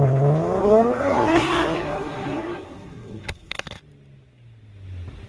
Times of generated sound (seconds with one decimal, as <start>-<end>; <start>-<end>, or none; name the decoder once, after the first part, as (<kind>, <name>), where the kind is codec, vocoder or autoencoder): 0.6-3.8 (codec, SNAC)